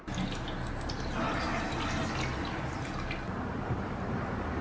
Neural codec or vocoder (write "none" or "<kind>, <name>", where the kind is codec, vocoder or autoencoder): none